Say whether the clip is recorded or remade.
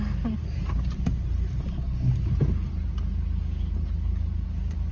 recorded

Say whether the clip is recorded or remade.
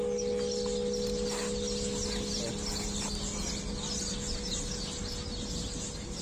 recorded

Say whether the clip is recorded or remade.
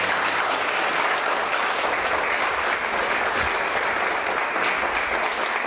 recorded